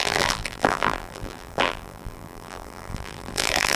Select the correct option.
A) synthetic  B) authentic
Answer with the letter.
A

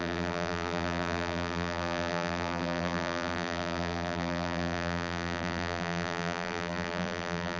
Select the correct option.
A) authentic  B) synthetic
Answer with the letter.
B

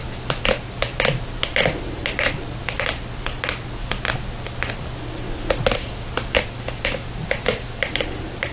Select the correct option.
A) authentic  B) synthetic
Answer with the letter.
A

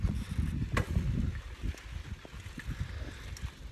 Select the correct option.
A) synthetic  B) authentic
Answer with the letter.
B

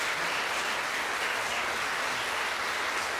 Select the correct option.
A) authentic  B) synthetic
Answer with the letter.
A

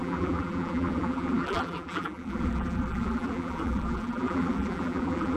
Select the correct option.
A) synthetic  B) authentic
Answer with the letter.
A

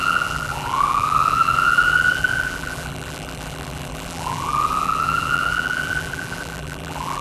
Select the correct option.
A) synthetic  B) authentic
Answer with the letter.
A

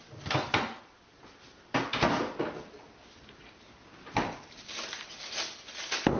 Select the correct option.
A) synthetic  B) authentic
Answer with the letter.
B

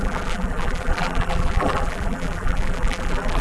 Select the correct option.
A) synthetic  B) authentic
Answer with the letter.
A